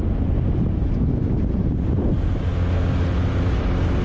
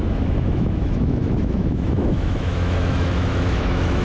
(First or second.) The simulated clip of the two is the second